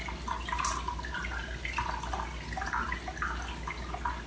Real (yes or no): yes